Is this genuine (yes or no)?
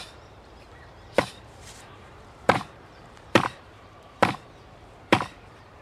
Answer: no